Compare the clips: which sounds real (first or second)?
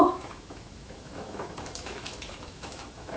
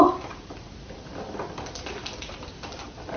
second